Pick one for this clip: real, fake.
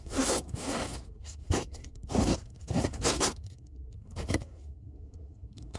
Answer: fake